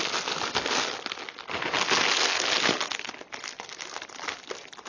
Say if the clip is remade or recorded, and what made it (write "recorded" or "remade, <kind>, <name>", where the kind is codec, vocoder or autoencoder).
recorded